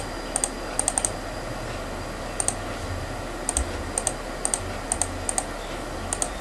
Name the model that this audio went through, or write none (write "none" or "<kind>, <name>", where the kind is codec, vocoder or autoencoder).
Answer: none